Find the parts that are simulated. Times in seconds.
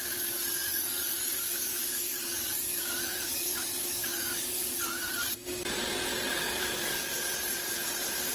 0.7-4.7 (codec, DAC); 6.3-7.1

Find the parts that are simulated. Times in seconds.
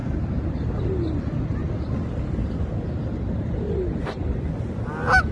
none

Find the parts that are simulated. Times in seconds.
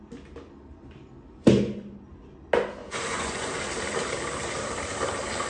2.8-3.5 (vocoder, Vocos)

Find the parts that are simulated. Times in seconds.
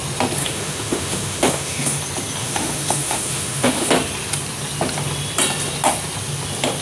0.4-2.0 (autoencoder, DAC-VAE); 2.4-3.9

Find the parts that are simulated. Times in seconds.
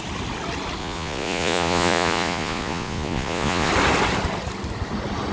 0.8-3.7 (vocoder, Vocos)